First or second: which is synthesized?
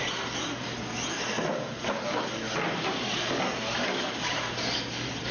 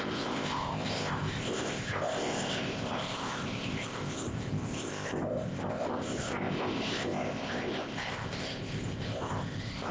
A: second